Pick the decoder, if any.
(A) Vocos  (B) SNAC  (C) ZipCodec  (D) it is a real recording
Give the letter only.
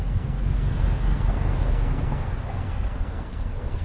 B